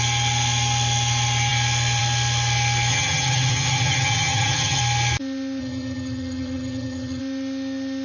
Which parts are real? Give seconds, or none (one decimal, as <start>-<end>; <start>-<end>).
0.0-2.9; 4.8-5.6; 7.2-8.0

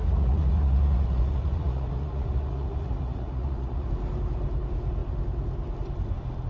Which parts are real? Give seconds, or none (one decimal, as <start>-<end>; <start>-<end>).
3.9-6.5

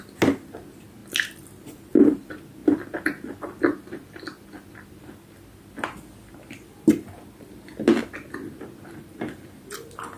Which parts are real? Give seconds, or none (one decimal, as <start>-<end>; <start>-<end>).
0.0-10.2

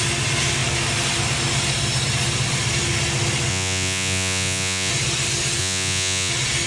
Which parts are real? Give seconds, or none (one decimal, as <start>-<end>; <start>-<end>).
0.0-3.5; 4.9-5.6; 6.3-6.7

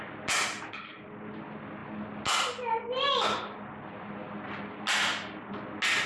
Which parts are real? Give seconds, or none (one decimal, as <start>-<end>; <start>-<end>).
0.0-6.1